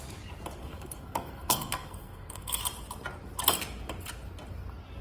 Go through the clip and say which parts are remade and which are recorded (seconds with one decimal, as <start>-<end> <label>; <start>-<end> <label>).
0.0-0.6 recorded; 0.6-2.6 remade; 2.6-5.0 recorded